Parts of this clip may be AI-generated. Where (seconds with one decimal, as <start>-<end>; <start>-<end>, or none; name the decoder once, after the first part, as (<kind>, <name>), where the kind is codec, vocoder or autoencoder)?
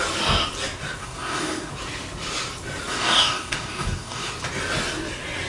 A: 1.0-1.7 (codec, DAC); 2.9-4.3